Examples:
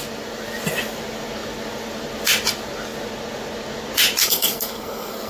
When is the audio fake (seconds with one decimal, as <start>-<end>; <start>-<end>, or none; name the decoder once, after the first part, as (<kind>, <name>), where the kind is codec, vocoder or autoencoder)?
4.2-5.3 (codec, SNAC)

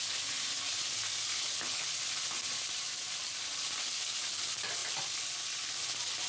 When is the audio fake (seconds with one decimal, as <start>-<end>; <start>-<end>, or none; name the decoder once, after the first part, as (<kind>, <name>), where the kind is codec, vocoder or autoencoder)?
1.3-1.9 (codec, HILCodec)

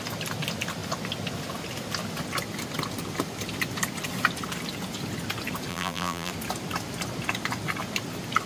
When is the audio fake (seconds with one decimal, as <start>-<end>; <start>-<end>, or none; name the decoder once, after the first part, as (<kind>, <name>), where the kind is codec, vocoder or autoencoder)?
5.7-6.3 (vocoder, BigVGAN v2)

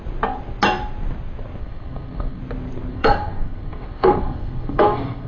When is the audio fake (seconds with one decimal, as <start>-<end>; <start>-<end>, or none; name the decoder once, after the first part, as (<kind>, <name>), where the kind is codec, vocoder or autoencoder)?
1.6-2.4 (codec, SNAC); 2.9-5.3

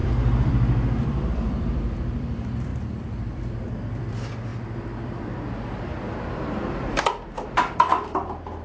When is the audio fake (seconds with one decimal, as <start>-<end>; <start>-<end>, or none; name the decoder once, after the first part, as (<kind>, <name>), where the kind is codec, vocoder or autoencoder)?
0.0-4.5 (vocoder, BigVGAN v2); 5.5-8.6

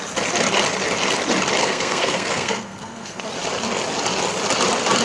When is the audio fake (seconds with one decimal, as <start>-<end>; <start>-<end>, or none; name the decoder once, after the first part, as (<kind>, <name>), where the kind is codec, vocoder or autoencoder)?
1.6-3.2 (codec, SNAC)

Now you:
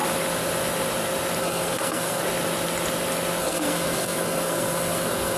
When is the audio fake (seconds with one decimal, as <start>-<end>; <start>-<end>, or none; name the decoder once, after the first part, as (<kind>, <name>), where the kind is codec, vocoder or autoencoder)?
1.4-2.2 (codec, SNAC); 3.4-5.4